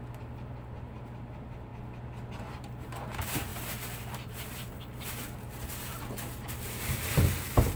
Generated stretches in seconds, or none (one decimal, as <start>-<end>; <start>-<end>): 0.0-1.7; 2.4-7.8